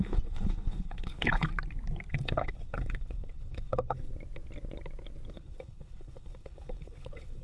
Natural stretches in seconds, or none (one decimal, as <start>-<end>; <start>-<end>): 1.5-2.1; 4.1-5.3